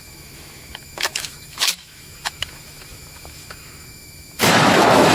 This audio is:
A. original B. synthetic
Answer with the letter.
B